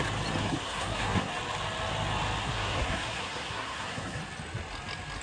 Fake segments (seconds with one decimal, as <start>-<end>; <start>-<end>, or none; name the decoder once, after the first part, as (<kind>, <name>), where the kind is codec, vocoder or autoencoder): 0.4-1.3 (codec, SNAC); 2.4-4.2

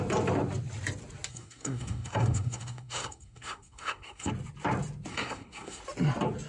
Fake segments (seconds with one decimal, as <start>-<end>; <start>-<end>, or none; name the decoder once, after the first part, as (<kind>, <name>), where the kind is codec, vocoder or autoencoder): 1.3-4.3 (codec, SNAC); 5.1-5.8

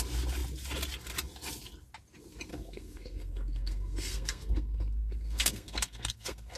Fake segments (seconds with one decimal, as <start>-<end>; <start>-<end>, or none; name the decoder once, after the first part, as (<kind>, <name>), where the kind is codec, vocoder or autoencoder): 2.5-6.6 (codec, SNAC)

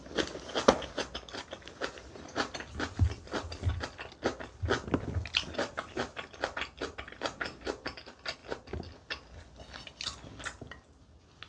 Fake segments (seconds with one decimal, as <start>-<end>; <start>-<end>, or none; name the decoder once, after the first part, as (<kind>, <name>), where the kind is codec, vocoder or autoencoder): none

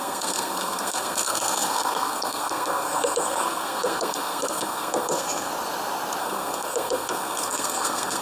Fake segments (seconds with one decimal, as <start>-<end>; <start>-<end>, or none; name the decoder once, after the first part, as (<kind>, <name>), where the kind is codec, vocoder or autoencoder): 0.0-5.5 (codec, SNAC); 6.2-8.2

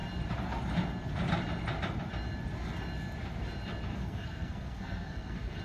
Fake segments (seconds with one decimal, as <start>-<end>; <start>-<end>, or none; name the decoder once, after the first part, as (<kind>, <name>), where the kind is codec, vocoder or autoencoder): 3.9-5.6 (codec, SNAC)